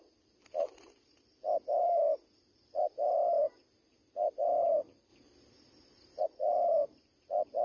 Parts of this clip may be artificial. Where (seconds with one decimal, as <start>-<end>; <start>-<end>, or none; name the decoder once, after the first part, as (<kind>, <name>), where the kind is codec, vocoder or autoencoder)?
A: none